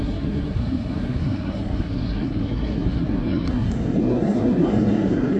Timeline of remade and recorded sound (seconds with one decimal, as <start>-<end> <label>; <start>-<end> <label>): 0.0-5.4 remade

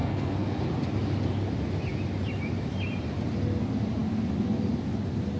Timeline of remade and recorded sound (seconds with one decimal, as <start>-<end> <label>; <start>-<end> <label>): 0.0-0.6 remade; 0.6-5.4 recorded

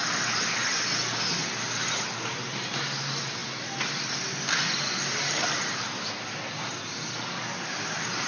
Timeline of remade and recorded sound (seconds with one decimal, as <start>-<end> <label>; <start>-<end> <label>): 0.0-8.3 recorded

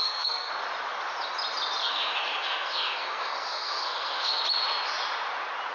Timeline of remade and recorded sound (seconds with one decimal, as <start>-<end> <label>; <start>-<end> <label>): 0.0-0.5 remade; 0.5-1.8 recorded; 1.8-4.4 remade; 4.4-5.7 recorded